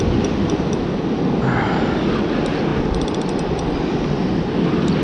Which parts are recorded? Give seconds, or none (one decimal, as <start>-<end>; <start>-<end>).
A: 0.0-5.0